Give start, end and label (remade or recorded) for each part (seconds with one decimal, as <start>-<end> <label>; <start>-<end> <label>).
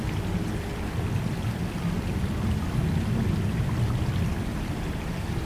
0.0-4.5 recorded; 4.5-5.5 remade